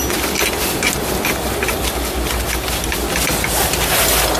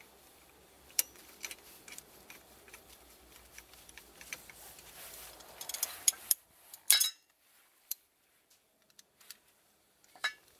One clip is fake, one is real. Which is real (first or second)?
first